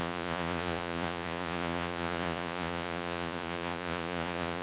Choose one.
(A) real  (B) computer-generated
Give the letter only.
B